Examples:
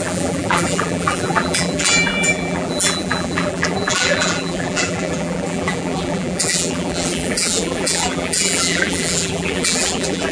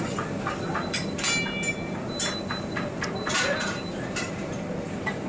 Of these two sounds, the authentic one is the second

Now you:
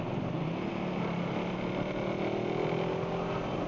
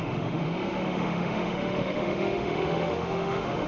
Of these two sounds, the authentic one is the first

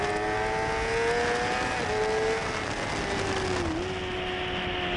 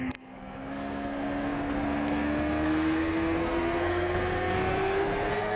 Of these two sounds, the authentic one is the first